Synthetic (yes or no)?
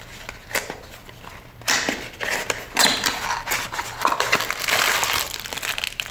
no